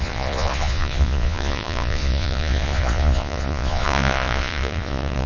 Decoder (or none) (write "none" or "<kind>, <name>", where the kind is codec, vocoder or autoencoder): vocoder, Vocos